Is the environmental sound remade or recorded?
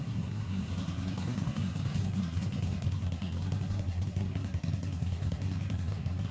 remade